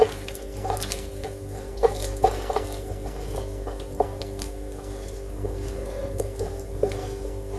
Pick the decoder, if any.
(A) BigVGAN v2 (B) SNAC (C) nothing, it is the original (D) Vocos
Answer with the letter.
B